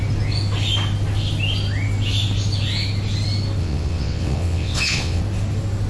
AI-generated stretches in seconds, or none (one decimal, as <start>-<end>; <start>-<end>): 3.6-5.2